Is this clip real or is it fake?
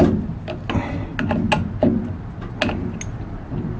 real